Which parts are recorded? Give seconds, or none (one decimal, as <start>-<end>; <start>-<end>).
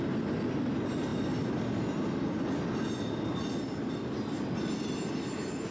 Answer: 0.0-5.7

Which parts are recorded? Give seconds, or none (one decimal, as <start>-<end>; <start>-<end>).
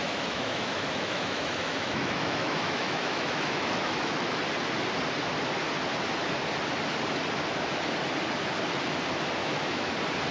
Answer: 4.4-9.4; 9.9-10.3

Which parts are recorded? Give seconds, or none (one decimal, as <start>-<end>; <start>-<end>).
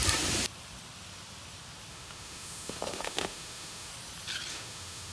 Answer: 0.0-1.9; 3.9-4.5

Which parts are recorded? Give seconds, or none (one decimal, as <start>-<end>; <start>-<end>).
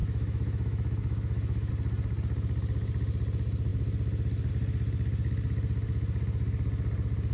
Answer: 1.7-7.3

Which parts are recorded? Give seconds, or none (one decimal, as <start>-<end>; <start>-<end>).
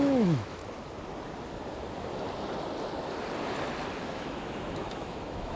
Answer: 0.6-4.0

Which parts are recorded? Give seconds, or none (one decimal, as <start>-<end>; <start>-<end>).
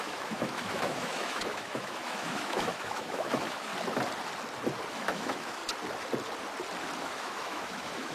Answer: 3.7-4.9; 5.6-7.0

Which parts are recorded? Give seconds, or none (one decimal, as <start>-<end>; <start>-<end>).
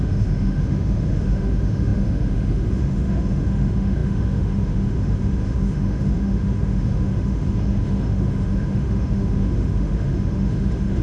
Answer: none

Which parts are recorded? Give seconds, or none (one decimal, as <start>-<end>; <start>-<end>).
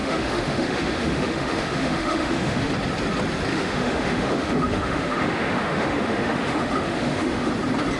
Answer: 2.7-3.5; 7.5-8.0